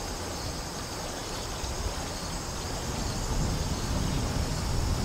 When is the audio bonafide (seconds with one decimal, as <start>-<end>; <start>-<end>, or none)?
0.0-5.0